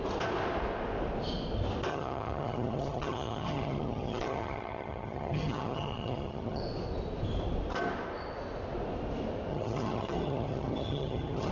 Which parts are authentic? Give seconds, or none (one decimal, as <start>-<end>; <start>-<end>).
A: 0.0-1.9; 6.6-9.5